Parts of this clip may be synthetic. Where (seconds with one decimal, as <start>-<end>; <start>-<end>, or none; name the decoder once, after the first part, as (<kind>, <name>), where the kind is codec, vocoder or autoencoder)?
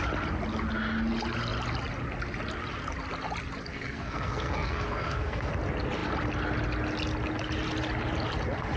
3.7-5.5 (codec, SNAC)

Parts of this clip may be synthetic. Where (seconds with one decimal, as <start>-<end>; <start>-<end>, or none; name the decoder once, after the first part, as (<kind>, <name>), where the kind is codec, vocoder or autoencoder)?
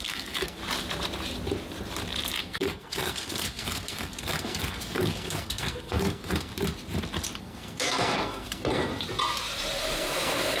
0.0-0.6 (codec, SNAC); 2.4-6.5; 7.4-8.9; 9.8-10.6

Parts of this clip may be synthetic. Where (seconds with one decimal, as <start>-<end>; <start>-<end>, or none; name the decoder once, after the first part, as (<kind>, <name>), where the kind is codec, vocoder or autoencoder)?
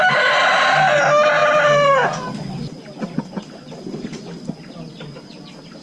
none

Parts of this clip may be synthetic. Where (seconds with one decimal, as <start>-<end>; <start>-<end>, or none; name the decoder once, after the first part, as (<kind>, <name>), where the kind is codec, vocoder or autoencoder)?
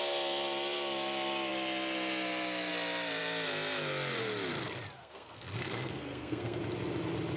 5.0-6.6 (codec, SNAC)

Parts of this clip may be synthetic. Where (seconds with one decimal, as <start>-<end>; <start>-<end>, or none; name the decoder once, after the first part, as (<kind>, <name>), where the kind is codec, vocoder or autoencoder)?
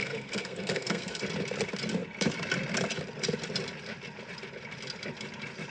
0.0-1.2 (codec, SNAC)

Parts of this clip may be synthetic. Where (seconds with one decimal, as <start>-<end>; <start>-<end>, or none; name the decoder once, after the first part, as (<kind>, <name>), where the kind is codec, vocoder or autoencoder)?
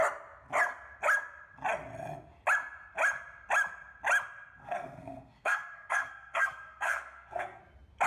4.6-7.6 (codec, SNAC)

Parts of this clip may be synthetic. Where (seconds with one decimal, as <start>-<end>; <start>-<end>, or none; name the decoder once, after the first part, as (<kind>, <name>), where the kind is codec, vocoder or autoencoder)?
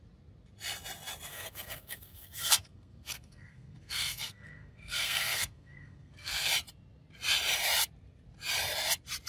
1.3-6.5 (codec, SNAC)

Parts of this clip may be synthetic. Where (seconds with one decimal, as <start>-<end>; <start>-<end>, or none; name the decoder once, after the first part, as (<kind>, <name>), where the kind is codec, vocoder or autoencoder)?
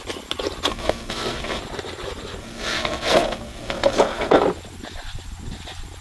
0.7-1.6 (codec, SNAC); 2.4-4.4